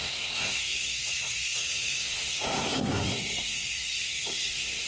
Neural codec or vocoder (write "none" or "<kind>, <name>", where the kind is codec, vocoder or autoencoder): codec, SNAC